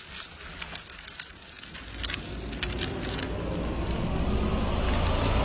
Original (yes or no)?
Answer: yes